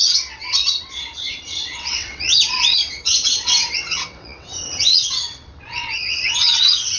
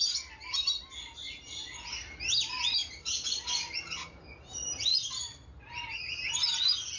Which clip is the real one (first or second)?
second